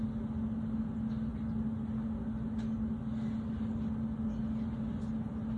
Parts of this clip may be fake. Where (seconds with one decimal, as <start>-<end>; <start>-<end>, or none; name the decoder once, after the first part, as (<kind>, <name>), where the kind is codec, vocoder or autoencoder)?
none